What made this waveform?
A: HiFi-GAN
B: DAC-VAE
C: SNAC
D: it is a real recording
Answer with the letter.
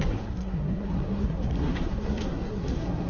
C